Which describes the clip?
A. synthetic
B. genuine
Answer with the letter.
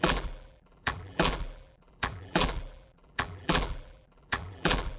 A